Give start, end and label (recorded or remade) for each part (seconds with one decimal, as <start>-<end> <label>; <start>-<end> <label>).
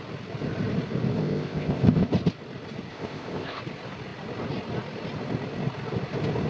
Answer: 0.0-1.2 recorded; 1.2-2.1 remade; 2.1-2.9 recorded; 2.9-3.6 remade; 3.6-6.5 recorded